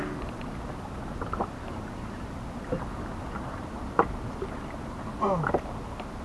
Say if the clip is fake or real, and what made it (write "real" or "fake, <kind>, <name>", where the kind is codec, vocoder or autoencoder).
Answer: real